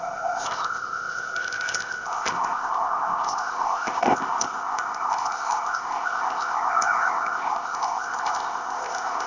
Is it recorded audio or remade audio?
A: remade